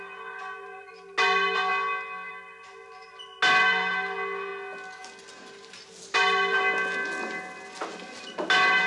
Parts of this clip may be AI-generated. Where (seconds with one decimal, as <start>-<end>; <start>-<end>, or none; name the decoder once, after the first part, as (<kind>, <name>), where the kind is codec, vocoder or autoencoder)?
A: none